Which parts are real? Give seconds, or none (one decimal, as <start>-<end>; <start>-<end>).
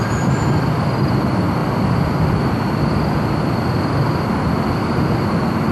0.0-5.7